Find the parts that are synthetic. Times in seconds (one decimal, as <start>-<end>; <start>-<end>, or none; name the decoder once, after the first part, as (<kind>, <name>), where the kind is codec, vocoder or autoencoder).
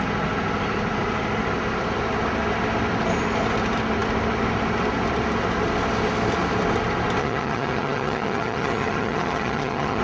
7.2-10.0 (vocoder, HiFi-GAN)